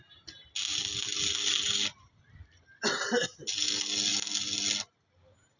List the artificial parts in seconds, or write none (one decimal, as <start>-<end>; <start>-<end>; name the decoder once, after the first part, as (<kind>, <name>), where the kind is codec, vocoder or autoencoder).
none